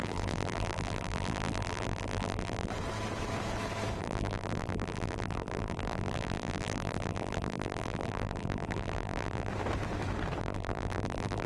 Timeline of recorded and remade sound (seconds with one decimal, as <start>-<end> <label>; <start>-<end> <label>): 0.0-2.7 remade; 2.7-4.0 recorded; 4.0-9.5 remade; 9.5-10.4 recorded; 10.4-11.5 remade